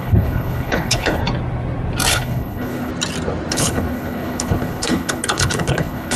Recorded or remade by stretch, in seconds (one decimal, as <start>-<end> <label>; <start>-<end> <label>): 0.0-1.2 remade; 1.2-2.1 recorded; 2.1-2.9 remade; 2.9-3.5 recorded; 3.5-6.2 remade